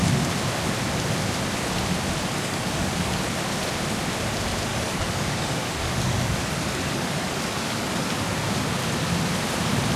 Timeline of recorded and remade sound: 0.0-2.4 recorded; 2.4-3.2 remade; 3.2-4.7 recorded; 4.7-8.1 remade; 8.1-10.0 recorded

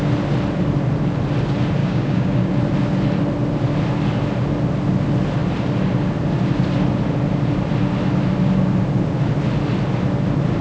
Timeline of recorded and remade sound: 0.0-1.8 recorded; 1.8-2.5 remade; 2.5-10.6 recorded